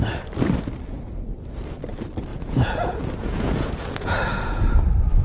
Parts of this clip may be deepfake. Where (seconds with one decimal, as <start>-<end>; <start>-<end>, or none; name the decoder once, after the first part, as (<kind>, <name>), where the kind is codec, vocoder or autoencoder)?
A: 2.3-4.8 (vocoder, Vocos)